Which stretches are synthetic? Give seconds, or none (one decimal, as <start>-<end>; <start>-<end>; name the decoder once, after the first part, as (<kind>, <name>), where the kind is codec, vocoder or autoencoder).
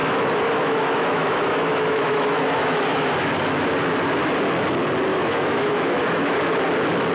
0.0-3.0 (autoencoder, DAC-VAE); 5.1-6.3